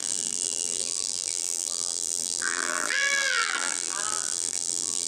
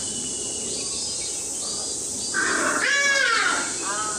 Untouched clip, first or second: second